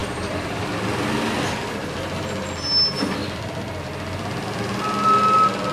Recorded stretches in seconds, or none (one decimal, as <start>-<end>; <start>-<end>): 0.7-3.2; 3.8-5.7